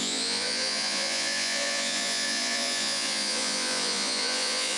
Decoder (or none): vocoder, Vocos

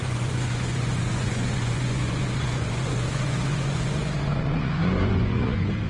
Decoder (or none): vocoder, Vocos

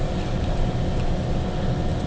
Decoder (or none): none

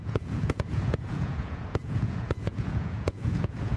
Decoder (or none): vocoder, Vocos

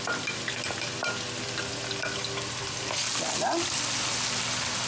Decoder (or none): none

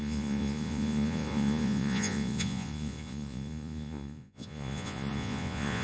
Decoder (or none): vocoder, Vocos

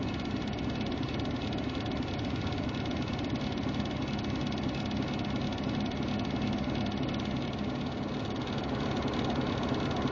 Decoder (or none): none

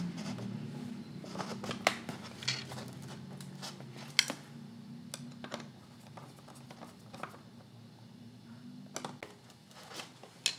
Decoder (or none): none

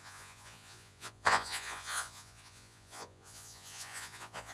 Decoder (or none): vocoder, Vocos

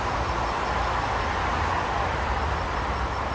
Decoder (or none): none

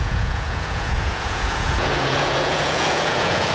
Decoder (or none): vocoder, Vocos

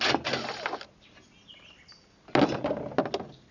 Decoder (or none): none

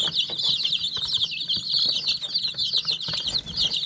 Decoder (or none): none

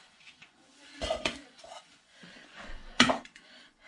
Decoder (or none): vocoder, Vocos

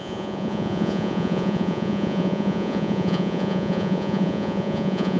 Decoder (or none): vocoder, Vocos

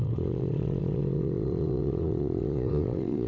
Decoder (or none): vocoder, Vocos